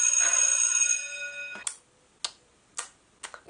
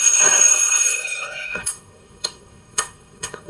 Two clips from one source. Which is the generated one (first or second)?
second